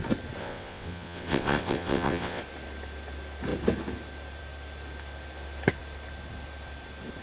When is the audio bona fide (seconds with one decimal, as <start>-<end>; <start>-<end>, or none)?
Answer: 0.0-0.4; 2.4-7.2